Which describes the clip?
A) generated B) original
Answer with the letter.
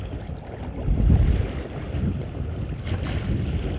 B